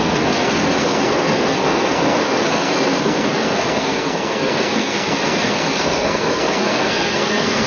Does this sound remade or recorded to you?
remade